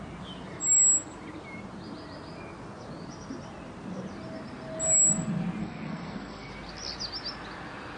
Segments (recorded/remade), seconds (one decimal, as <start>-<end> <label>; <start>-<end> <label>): 0.0-5.6 recorded; 5.6-6.5 remade; 6.5-8.0 recorded